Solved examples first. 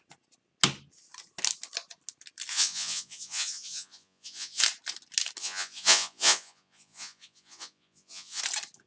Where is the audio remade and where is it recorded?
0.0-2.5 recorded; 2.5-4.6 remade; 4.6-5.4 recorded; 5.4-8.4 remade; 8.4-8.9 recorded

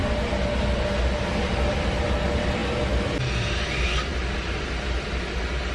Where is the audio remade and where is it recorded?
0.0-5.7 recorded

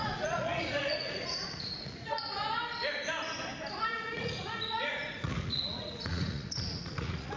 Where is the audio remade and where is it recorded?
0.0-2.6 remade; 2.6-3.8 recorded; 3.8-7.4 remade

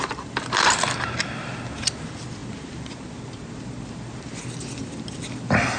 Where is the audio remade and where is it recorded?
0.0-5.8 recorded

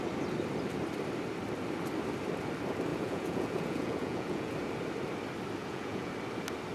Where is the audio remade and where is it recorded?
0.0-2.9 recorded; 2.9-4.5 remade; 4.5-5.6 recorded; 5.6-6.1 remade; 6.1-6.7 recorded

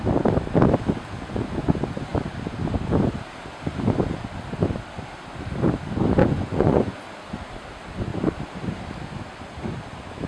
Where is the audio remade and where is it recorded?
0.0-6.2 recorded; 6.2-7.1 remade; 7.1-10.3 recorded